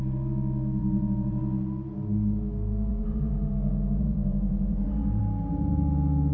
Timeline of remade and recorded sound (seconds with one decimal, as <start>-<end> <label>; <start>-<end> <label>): 0.0-0.8 recorded; 0.8-1.4 remade; 1.4-2.9 recorded; 2.9-5.2 remade; 5.2-6.3 recorded